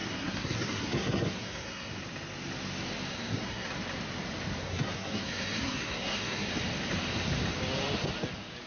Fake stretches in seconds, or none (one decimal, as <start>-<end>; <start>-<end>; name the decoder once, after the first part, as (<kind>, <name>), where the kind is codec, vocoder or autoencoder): 0.0-2.0 (codec, SNAC); 3.1-3.7; 4.6-6.5